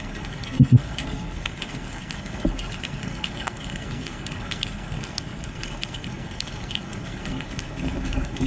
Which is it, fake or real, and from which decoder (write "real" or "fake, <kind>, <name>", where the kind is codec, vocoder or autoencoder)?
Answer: fake, codec, SNAC